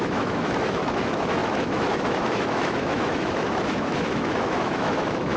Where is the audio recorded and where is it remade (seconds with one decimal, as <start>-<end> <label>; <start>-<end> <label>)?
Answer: 0.0-5.4 remade